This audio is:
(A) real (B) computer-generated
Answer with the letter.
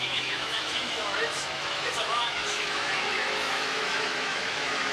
B